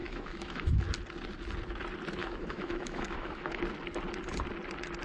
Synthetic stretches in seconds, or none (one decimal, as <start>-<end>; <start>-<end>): 0.0-0.9; 2.2-3.6